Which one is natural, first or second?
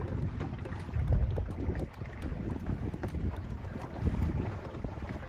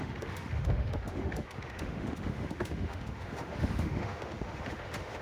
first